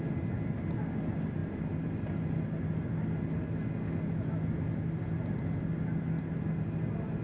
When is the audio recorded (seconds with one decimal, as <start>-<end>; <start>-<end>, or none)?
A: 0.0-7.2